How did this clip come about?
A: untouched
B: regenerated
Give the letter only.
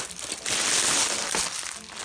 A